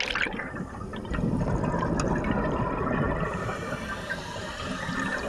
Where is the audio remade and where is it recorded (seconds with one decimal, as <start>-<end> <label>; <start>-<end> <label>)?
0.0-5.3 recorded